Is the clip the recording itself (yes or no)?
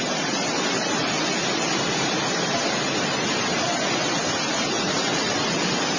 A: yes